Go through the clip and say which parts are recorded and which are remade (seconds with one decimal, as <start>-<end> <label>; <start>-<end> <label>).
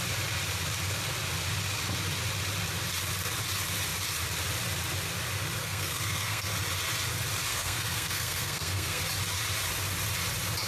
0.0-5.6 recorded; 5.6-6.5 remade; 6.5-7.5 recorded; 7.5-9.0 remade; 9.0-10.7 recorded